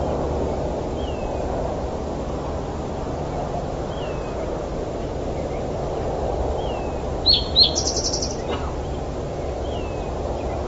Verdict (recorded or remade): recorded